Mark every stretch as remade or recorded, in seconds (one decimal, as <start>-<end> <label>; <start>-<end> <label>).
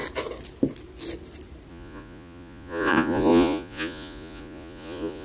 0.0-1.7 recorded; 1.7-5.2 remade